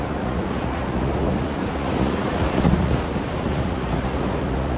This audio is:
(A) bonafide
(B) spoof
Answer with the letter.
B